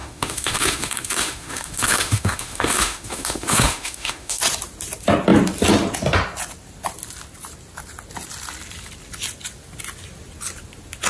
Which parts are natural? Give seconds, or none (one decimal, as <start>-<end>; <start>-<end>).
4.4-11.1